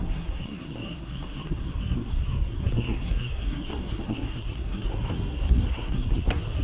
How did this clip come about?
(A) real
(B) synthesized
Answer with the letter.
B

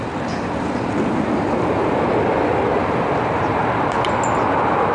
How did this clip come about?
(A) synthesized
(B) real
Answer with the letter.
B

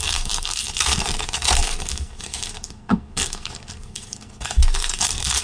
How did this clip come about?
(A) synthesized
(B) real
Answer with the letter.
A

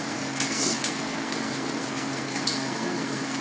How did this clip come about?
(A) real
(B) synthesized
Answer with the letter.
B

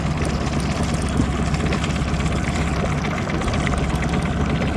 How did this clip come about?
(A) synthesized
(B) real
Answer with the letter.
B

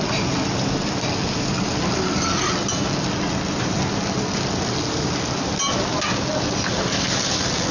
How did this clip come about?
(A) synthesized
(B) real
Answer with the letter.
B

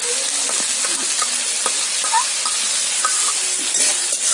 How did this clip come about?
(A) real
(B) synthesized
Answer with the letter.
A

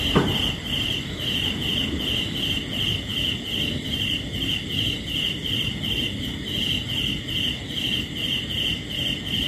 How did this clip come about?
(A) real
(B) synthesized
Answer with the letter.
A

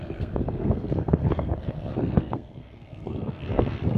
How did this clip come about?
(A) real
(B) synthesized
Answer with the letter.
B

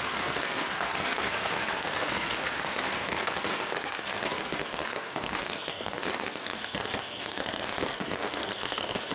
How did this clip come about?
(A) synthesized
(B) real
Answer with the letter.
A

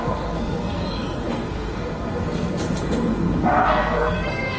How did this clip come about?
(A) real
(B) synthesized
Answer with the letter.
B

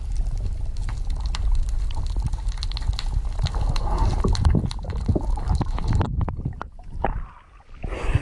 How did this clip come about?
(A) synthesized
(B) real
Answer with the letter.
B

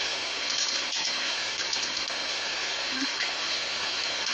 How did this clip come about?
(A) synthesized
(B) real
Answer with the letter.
A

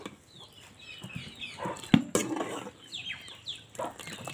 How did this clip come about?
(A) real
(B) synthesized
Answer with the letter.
A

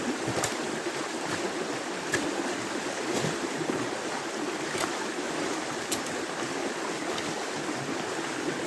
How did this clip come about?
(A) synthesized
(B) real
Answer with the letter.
B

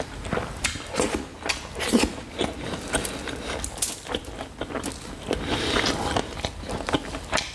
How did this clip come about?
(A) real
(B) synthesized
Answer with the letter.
A